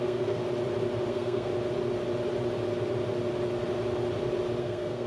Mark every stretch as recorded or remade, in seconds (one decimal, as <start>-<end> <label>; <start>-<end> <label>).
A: 0.0-0.4 remade; 0.4-1.1 recorded; 1.1-1.5 remade; 1.5-4.6 recorded; 4.6-5.1 remade